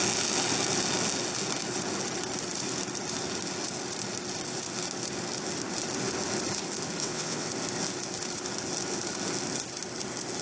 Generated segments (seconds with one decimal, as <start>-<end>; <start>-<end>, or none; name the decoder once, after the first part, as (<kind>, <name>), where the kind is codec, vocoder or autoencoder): 7.0-7.5 (vocoder, WaveNeXt)